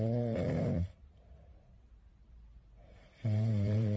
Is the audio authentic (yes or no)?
no